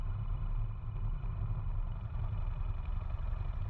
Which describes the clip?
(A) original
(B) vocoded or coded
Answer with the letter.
A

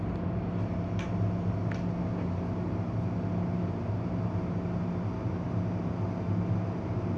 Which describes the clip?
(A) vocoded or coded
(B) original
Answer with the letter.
B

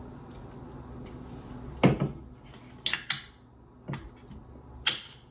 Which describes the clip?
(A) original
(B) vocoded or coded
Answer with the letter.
A